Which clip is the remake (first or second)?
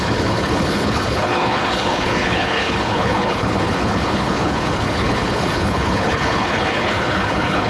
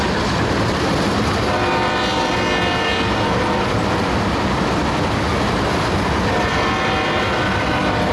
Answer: first